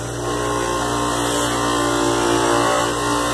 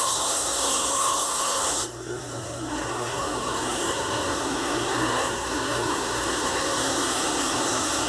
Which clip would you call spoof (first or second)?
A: second